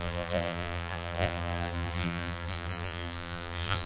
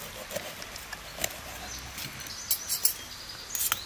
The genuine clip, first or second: second